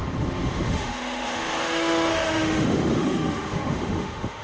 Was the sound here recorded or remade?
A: remade